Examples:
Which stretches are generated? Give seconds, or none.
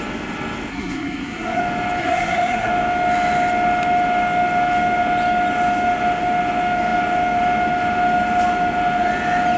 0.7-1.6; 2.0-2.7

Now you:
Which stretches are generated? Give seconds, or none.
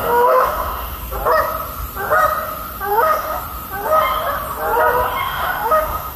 0.0-1.0; 2.9-3.4; 5.2-6.2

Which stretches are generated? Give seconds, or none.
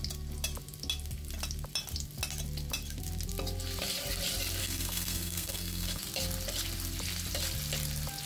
4.6-6.0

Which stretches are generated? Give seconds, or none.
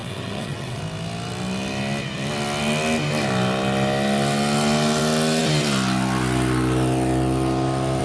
0.0-0.8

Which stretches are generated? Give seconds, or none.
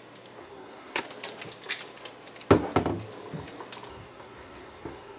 0.4-1.0; 3.9-5.2